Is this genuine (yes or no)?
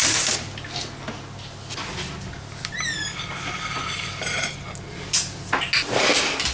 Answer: yes